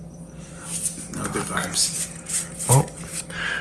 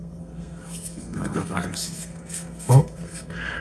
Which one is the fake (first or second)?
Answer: second